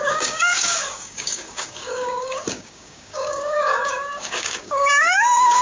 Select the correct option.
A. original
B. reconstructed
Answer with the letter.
B